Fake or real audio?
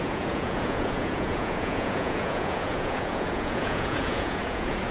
fake